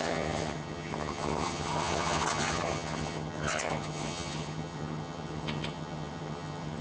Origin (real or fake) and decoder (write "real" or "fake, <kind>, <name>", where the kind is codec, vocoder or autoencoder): fake, vocoder, HiFi-GAN